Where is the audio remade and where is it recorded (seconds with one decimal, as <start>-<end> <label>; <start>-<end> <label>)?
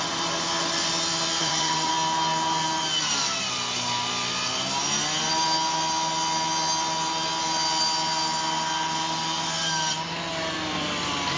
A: 0.0-1.4 recorded; 1.4-1.9 remade; 1.9-11.4 recorded